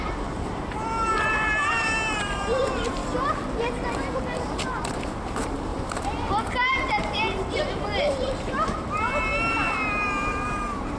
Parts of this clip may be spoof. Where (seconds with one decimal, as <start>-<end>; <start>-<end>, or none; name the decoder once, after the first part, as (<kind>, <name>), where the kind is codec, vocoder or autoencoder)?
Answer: 0.0-3.0 (vocoder, BigVGAN v2); 4.4-11.0